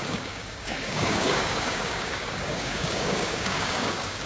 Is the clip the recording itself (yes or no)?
no